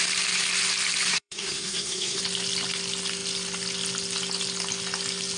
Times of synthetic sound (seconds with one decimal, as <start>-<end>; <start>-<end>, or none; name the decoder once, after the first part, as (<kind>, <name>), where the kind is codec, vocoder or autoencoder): 1.1-2.2 (codec, SNAC)